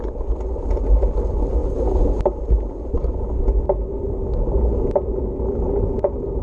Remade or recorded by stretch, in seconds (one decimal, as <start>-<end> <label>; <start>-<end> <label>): 0.0-1.6 recorded; 1.6-3.4 remade; 3.4-4.0 recorded; 4.0-5.2 remade; 5.2-6.4 recorded